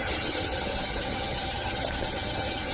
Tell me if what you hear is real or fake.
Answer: fake